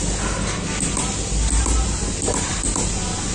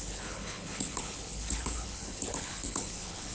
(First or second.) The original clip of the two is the first